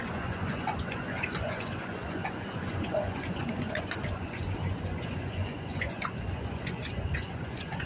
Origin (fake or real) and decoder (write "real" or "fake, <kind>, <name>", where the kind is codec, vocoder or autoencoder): fake, vocoder, Vocos